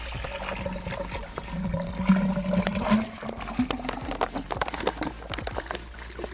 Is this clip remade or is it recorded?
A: recorded